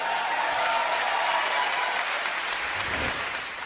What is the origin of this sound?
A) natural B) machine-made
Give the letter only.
A